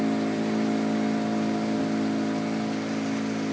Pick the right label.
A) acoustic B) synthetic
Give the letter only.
A